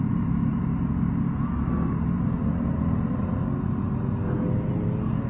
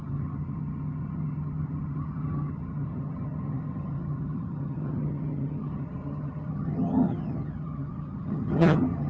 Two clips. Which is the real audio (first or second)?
first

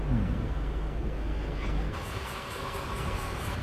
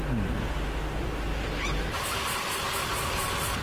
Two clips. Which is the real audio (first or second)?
second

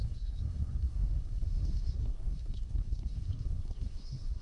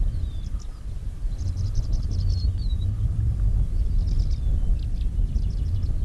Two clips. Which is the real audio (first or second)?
second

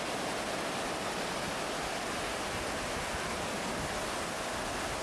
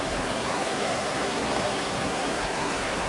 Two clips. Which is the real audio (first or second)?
first